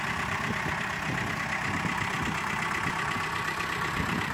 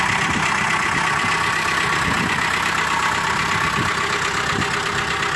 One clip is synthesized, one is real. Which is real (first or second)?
second